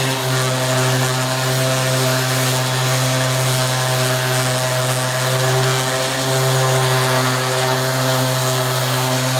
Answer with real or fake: real